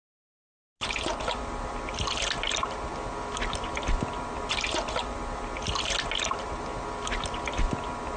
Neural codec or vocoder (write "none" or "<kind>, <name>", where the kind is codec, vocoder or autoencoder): none